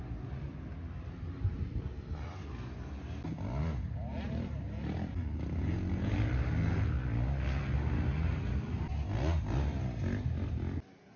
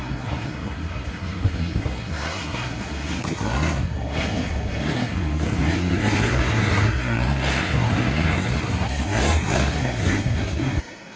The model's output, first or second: second